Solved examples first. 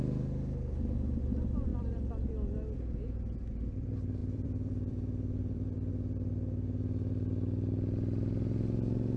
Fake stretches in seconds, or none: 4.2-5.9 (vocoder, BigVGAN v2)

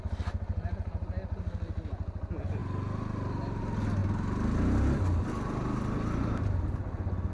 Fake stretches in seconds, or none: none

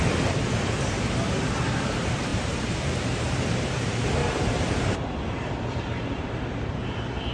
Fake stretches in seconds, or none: 0.0-4.2 (vocoder, BigVGAN v2); 4.8-7.3

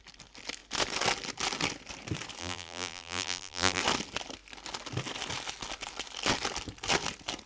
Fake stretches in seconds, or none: 2.4-3.8 (vocoder, BigVGAN v2)

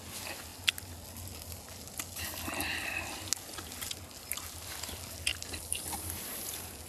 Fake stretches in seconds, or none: none

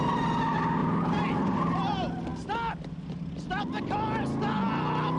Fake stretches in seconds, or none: 0.8-1.6 (vocoder, BigVGAN v2)